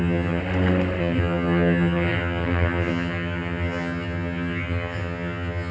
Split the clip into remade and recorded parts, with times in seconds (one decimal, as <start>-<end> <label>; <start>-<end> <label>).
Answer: 0.0-0.4 remade; 0.4-1.0 recorded; 1.0-5.7 remade